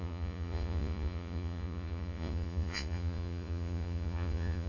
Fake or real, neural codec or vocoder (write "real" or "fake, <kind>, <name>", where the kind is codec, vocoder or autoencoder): fake, vocoder, Vocos